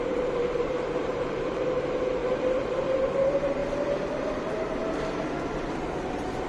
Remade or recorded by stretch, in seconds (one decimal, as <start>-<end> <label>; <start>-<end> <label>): 0.0-2.2 remade; 2.2-3.2 recorded; 3.2-3.6 remade; 3.6-4.3 recorded; 4.3-4.8 remade; 4.8-6.1 recorded; 6.1-6.5 remade